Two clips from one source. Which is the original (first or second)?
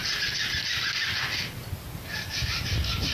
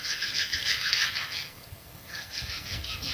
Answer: first